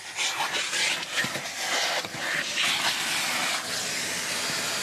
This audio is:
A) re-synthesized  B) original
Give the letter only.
B